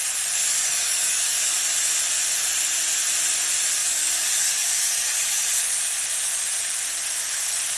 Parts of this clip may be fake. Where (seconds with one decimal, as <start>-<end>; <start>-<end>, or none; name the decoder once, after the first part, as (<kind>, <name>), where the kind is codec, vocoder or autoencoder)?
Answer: 0.5-1.6 (codec, DAC); 3.8-5.8